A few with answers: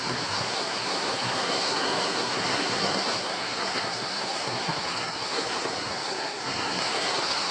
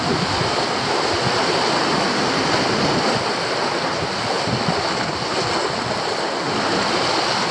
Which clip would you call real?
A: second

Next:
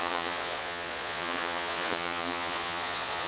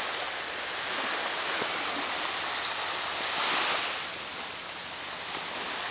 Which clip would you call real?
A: second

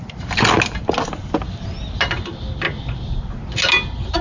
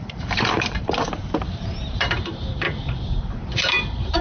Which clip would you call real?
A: first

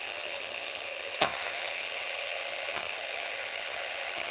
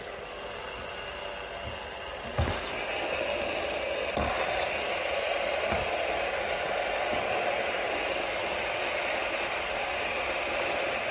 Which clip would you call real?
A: second